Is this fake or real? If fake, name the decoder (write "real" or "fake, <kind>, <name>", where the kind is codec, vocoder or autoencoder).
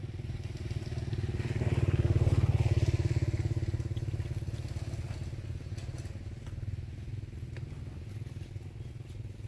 real